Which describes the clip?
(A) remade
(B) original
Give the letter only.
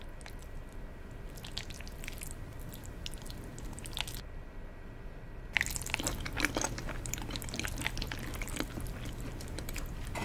B